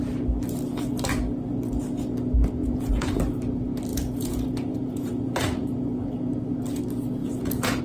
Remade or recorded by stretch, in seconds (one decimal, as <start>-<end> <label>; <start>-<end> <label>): 0.0-2.6 recorded; 2.6-3.2 remade; 3.2-3.9 recorded; 3.9-6.1 remade; 6.1-7.2 recorded; 7.2-7.8 remade